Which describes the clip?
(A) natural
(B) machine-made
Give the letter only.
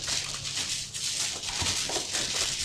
A